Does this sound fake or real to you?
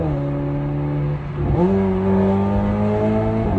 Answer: real